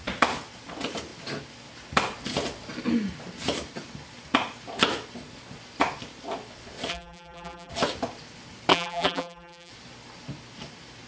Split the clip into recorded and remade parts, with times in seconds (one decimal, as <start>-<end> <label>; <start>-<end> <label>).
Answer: 0.0-6.9 recorded; 6.9-7.7 remade; 7.7-8.7 recorded; 8.7-9.7 remade; 9.7-11.1 recorded